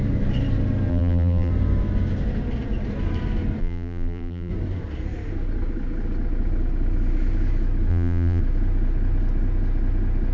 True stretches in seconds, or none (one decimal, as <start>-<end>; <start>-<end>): 0.0-0.9; 1.5-3.6; 4.5-7.9; 8.4-10.3